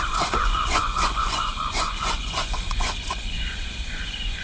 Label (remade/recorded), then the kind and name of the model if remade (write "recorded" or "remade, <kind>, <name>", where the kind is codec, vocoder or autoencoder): remade, vocoder, Vocos